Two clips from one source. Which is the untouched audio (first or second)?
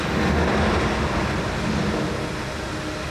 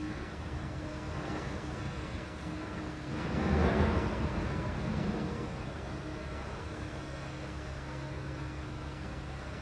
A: first